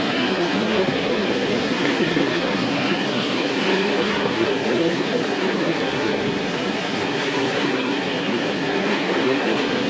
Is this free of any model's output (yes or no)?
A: no